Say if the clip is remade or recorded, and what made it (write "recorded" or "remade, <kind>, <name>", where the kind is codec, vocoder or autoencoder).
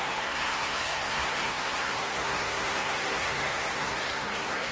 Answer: remade, codec, SNAC